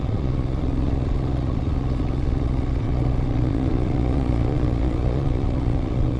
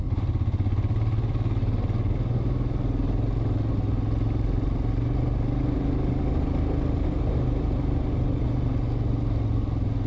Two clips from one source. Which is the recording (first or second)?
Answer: second